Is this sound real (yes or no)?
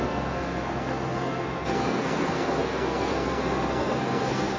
no